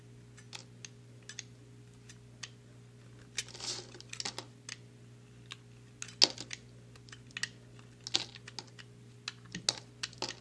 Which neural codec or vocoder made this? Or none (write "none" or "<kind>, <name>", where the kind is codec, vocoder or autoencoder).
none